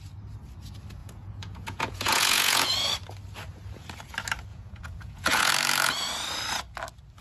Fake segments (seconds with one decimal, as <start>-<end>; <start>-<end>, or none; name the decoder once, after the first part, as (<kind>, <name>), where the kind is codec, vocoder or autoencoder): 1.0-2.7 (vocoder, Vocos); 4.5-5.5